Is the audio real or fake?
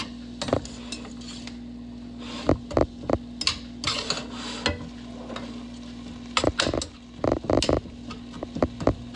real